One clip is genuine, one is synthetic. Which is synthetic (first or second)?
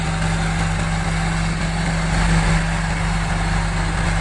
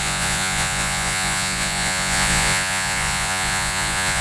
second